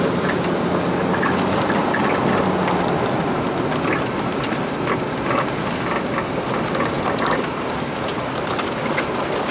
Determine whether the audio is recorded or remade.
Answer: recorded